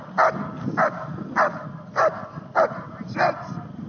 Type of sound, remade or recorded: recorded